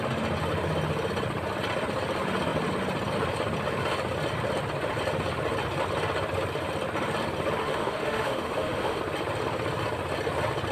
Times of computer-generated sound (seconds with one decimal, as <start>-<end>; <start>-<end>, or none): 7.6-9.0